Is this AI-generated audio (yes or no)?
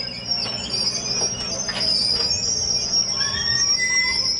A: no